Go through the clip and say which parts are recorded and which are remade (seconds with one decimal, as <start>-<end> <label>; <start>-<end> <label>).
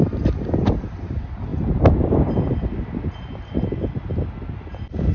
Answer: 0.0-5.1 recorded